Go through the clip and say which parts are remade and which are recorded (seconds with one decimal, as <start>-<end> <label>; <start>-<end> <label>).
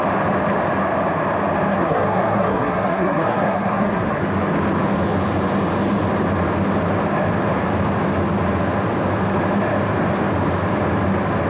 0.0-1.7 recorded; 1.7-4.2 remade; 4.2-11.5 recorded